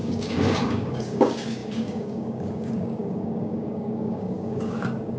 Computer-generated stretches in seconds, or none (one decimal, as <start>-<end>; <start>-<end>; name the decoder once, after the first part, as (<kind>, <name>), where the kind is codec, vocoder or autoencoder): 0.0-5.2 (codec, DAC)